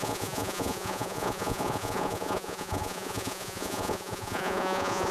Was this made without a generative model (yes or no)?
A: no